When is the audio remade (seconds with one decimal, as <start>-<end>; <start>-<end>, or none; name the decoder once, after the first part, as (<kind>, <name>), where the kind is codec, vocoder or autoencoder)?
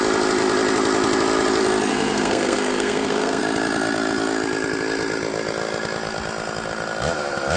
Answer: 1.9-3.4 (codec, SNAC)